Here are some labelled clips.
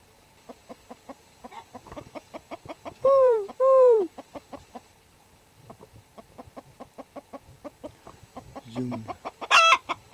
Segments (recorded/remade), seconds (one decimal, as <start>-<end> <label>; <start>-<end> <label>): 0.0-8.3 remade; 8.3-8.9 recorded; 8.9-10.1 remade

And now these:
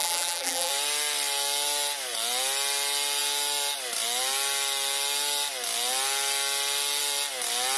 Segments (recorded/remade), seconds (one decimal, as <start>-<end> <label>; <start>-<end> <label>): 0.0-0.7 remade; 0.7-7.8 recorded

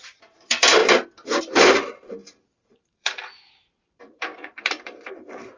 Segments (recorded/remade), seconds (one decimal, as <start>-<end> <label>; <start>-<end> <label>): 0.0-0.8 remade; 0.8-1.4 recorded; 1.4-5.6 remade